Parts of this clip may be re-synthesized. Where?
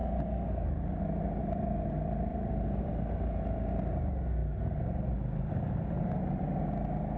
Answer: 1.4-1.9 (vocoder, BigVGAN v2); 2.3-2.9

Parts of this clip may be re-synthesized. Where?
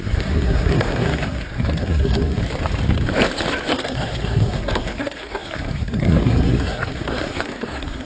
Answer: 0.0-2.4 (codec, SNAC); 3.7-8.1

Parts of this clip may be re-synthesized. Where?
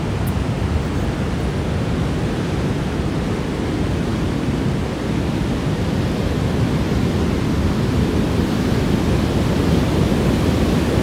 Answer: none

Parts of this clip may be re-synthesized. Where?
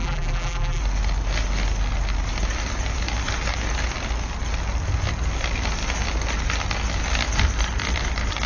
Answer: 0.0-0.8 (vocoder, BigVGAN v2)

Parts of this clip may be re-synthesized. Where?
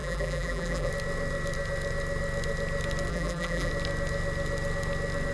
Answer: 0.0-0.9 (vocoder, BigVGAN v2); 3.1-3.7